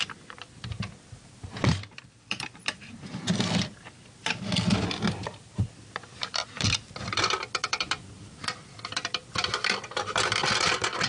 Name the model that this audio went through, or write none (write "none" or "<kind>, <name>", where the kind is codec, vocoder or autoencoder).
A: vocoder, BigVGAN v2